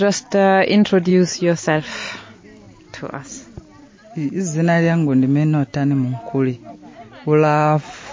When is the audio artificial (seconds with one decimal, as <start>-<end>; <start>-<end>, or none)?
none